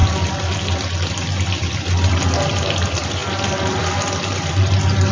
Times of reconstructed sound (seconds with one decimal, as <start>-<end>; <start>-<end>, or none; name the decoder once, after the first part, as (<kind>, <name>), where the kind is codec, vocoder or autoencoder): none